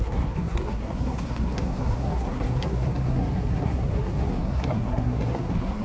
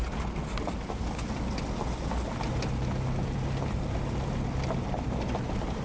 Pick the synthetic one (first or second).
first